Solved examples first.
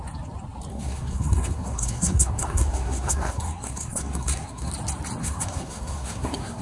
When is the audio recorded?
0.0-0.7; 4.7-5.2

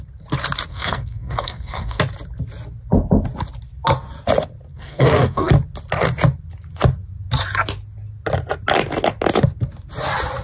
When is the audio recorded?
0.0-0.7; 2.0-4.7; 5.5-10.4

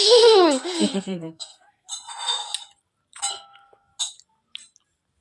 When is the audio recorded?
1.9-3.3; 3.9-5.2

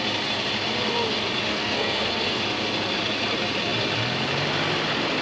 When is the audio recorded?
0.0-1.5; 2.4-5.2

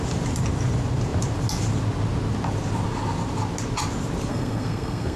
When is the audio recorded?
0.0-4.3

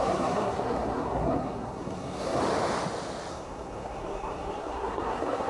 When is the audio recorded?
2.4-3.3